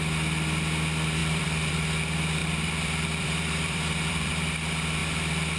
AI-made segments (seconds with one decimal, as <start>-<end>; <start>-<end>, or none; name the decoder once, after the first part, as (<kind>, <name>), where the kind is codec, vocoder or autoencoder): 1.2-1.7 (vocoder, BigVGAN v2); 2.4-4.3; 5.0-5.6